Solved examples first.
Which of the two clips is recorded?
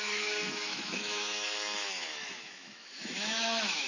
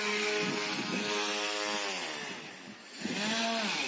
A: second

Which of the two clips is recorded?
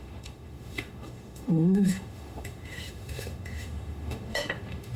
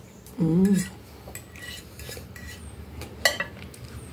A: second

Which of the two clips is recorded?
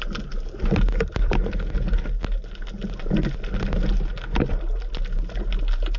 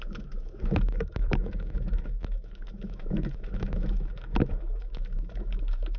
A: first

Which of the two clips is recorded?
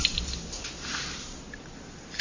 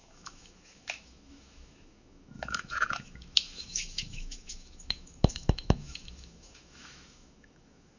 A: first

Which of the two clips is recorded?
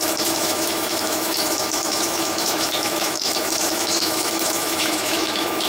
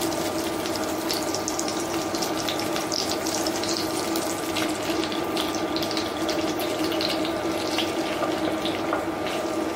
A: second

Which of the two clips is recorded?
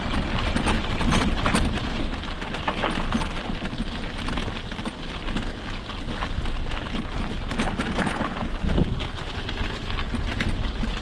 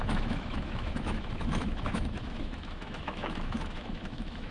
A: first